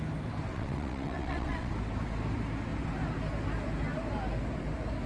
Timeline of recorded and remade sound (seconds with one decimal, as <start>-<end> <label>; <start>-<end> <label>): 0.0-0.5 recorded; 0.5-1.7 remade; 1.7-5.1 recorded